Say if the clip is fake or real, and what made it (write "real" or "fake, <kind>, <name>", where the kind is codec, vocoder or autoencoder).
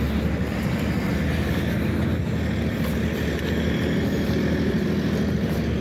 real